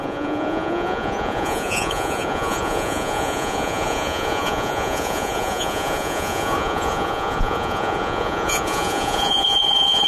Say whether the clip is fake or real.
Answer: fake